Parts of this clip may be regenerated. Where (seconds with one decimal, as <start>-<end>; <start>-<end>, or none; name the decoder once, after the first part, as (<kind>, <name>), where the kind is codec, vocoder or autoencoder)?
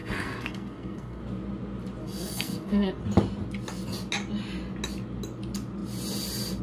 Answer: 0.0-1.2 (codec, SNAC); 2.0-3.0